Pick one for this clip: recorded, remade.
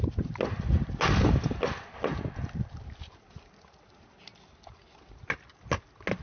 recorded